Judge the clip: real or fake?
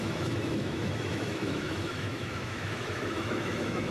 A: fake